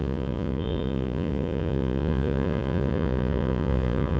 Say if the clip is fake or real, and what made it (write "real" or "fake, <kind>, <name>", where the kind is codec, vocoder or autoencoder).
fake, vocoder, Vocos